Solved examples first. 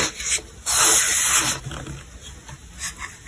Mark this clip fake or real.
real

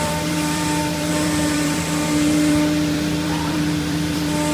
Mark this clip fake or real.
fake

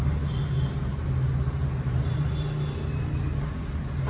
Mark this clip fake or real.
real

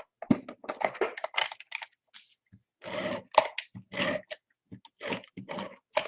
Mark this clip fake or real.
real